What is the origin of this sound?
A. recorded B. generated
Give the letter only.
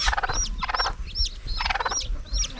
A